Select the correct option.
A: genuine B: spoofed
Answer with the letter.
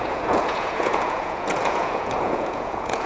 B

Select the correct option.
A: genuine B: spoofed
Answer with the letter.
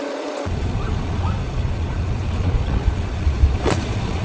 B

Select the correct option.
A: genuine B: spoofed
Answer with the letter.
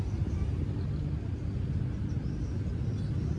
A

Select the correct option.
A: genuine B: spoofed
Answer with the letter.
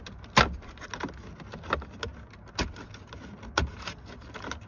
A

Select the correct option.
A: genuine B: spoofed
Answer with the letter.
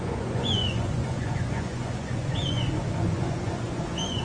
B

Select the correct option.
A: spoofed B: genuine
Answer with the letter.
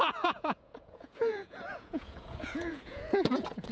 A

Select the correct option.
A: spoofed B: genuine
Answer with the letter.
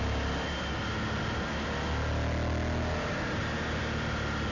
B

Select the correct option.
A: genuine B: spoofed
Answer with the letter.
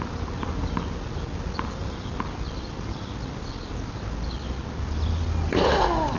A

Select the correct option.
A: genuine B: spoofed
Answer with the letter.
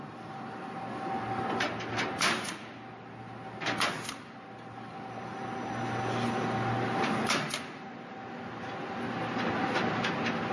A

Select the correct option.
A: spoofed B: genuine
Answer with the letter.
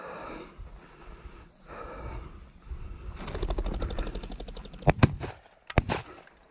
B